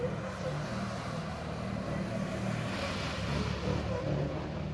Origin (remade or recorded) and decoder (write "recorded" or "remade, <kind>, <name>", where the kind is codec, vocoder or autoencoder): recorded